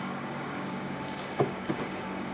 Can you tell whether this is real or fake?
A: fake